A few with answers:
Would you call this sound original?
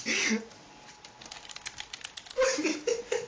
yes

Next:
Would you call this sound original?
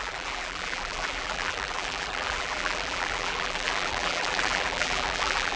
no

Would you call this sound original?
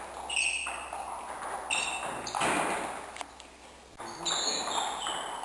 yes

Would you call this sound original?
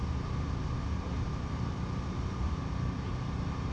no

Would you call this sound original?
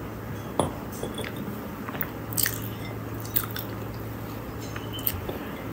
yes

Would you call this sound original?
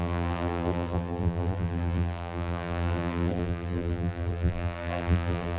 no